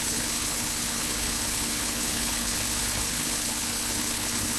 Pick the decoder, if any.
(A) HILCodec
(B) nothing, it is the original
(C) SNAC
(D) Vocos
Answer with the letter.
A